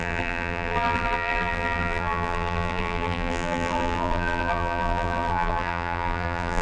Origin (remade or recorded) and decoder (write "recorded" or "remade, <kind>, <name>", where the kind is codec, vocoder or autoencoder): remade, vocoder, BigVGAN v2